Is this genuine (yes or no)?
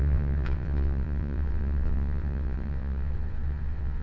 no